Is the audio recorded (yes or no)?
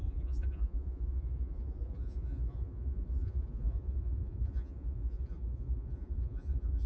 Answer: no